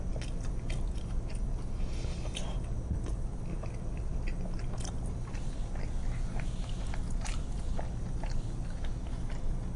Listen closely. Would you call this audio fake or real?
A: real